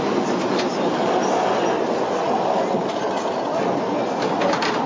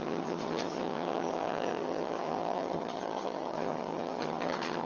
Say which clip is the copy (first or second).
second